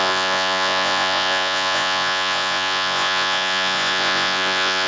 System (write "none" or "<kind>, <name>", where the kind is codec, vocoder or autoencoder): vocoder, Vocos